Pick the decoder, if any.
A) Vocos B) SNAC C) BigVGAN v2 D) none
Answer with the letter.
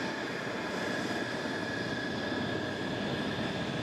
D